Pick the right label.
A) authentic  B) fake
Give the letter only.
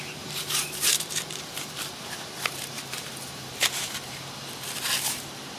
B